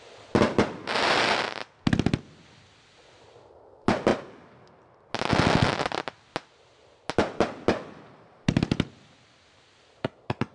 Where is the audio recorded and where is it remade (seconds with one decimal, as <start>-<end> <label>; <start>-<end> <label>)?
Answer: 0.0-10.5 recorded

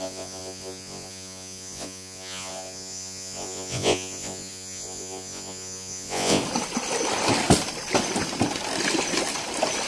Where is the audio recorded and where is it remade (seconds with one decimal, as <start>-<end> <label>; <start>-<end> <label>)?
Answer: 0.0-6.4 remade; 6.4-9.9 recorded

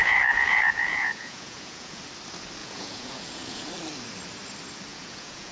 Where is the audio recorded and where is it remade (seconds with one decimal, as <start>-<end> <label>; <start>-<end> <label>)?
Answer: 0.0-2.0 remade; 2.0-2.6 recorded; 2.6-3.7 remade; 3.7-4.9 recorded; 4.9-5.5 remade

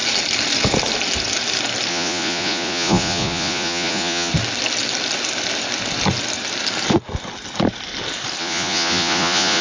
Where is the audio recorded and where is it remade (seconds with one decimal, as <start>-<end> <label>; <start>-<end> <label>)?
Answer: 0.0-1.9 recorded; 1.9-4.3 remade; 4.3-8.4 recorded; 8.4-9.6 remade

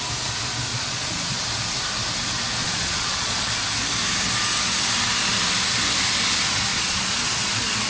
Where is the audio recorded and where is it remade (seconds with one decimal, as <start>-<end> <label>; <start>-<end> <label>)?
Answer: 0.0-0.7 recorded; 0.7-1.4 remade; 1.4-2.6 recorded; 2.6-3.5 remade; 3.5-6.7 recorded; 6.7-7.5 remade; 7.5-7.9 recorded

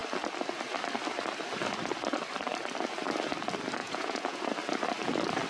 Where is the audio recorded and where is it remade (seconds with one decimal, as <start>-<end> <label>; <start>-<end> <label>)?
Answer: 0.0-3.8 recorded; 3.8-4.4 remade; 4.4-5.5 recorded

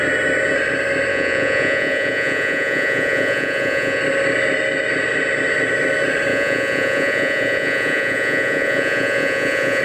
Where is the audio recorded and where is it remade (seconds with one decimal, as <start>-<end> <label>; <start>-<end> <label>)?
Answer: 0.0-1.1 recorded; 1.1-4.0 remade; 4.0-6.3 recorded; 6.3-9.8 remade